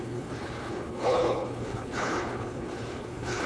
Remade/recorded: remade